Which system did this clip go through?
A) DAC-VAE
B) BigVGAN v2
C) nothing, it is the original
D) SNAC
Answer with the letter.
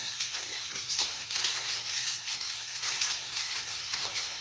D